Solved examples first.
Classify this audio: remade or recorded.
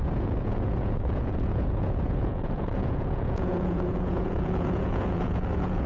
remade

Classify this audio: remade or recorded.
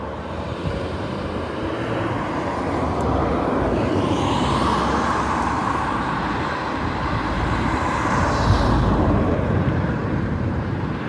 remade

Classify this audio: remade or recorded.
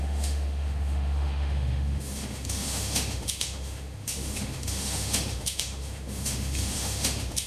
remade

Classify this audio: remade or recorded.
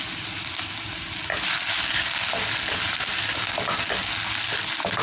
recorded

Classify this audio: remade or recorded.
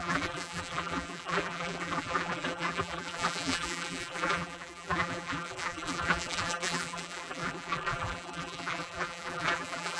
remade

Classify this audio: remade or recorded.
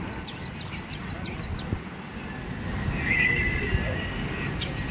recorded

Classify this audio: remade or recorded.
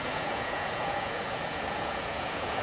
remade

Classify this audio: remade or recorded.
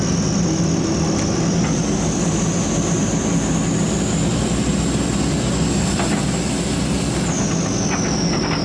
recorded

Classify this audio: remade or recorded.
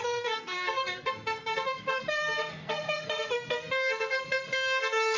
remade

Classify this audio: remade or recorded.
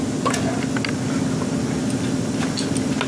recorded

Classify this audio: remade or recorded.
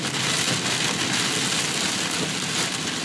recorded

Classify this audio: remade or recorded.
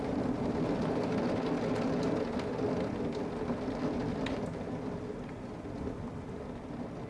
recorded